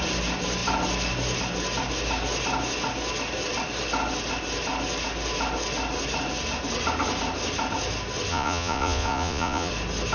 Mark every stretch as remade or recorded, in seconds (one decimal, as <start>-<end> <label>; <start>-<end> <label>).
0.0-8.3 recorded; 8.3-9.7 remade; 9.7-10.1 recorded

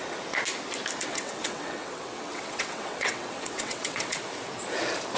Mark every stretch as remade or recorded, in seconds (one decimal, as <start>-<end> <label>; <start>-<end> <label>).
0.0-1.1 recorded; 1.1-4.2 remade; 4.2-5.2 recorded

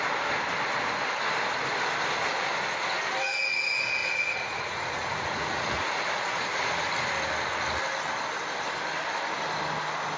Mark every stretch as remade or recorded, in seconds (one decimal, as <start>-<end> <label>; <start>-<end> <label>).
0.0-4.0 recorded; 4.0-6.8 remade; 6.8-10.2 recorded

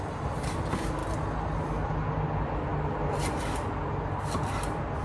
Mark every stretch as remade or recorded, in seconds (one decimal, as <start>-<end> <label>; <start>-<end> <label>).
0.0-5.0 recorded

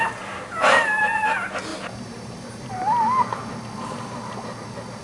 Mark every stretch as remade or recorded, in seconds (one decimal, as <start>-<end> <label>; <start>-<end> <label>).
0.0-1.7 recorded; 1.7-2.7 remade; 2.7-5.0 recorded

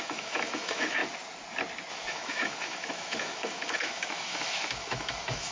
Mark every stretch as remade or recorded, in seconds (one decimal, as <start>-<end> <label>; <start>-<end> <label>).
0.0-1.0 remade; 1.0-1.9 recorded; 1.9-5.5 remade